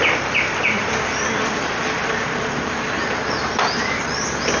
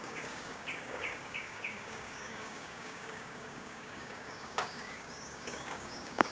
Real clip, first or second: first